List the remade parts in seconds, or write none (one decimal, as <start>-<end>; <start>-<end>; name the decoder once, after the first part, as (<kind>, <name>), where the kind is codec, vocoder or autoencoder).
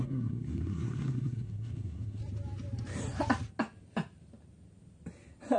0.0-2.2 (codec, SNAC)